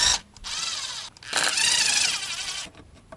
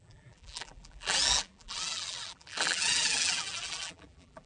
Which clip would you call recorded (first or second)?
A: first